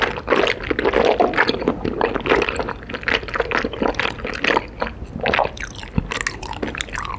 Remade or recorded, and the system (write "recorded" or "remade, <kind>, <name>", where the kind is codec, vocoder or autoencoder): recorded